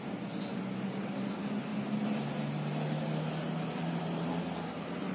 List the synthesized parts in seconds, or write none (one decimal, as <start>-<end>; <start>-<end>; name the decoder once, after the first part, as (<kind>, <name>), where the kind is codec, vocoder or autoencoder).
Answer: none

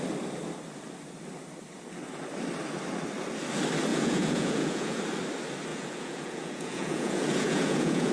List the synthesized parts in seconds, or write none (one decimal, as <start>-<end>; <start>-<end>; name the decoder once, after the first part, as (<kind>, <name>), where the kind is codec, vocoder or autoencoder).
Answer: 3.9-5.0 (vocoder, Vocos); 5.7-8.1